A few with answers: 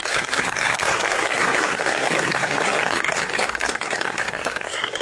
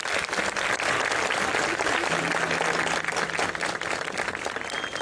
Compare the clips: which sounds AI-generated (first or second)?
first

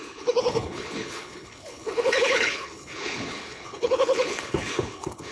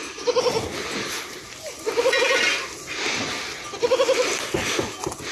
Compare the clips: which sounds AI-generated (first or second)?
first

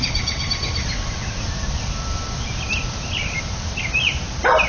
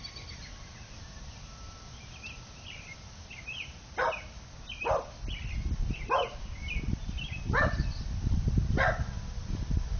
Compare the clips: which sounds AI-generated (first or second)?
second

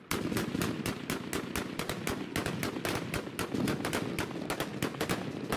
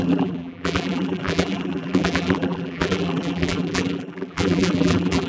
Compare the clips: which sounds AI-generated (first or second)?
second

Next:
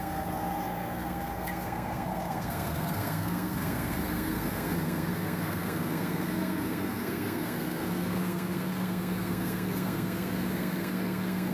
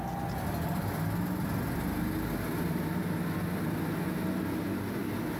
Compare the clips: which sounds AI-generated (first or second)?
first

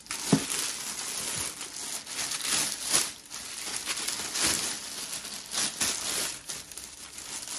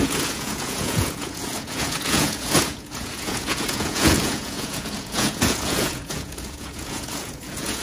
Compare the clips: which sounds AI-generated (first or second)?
second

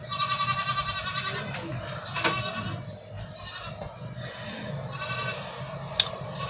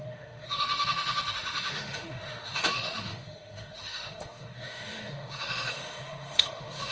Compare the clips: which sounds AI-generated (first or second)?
second